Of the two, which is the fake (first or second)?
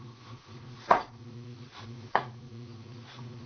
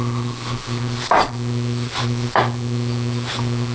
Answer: first